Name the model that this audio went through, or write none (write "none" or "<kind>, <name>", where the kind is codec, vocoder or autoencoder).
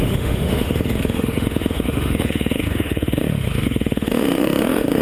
autoencoder, DAC-VAE